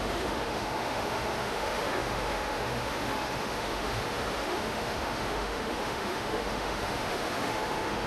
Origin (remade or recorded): remade